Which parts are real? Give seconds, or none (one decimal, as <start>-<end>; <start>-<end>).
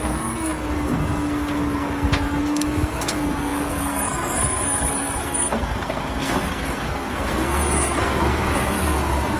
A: none